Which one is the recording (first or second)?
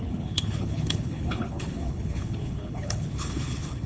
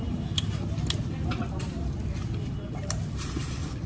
second